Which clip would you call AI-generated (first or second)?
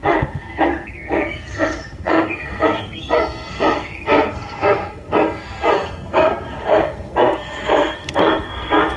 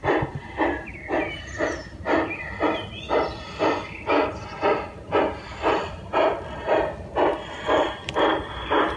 first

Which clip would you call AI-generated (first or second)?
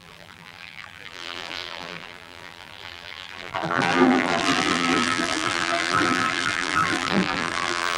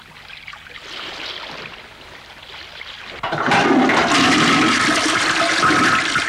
first